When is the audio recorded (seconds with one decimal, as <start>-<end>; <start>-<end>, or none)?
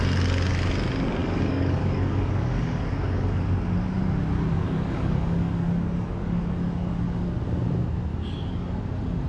0.0-1.2; 3.4-4.5; 7.3-8.1; 8.8-9.3